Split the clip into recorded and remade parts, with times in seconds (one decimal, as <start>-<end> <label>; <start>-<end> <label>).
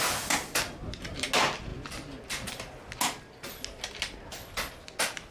0.0-5.3 recorded